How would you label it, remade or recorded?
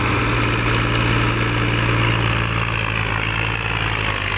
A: recorded